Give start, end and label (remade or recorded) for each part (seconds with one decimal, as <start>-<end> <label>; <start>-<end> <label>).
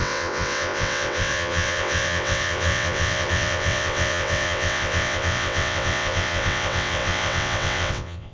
0.0-8.3 remade